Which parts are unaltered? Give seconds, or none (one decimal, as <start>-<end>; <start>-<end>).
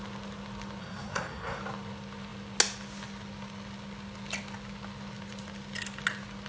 0.0-0.8; 1.6-6.5